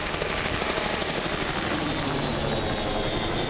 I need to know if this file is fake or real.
real